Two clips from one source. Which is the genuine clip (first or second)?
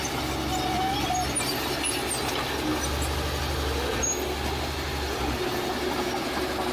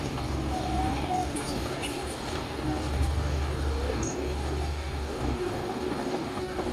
first